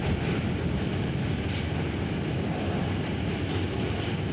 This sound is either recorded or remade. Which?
recorded